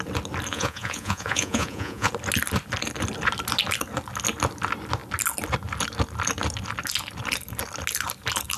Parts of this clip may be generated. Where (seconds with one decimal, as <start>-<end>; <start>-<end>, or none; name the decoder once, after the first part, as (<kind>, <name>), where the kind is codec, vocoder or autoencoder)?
0.5-2.1 (vocoder, Vocos)